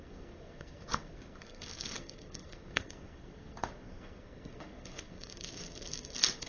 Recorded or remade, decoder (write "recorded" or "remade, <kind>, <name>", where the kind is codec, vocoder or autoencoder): remade, codec, SNAC